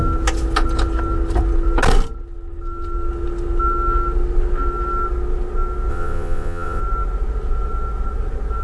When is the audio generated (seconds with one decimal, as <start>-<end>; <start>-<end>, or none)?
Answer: 5.9-6.8